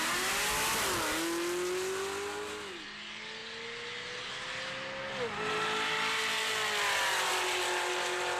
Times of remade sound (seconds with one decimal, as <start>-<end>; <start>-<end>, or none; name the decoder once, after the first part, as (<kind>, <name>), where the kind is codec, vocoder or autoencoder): none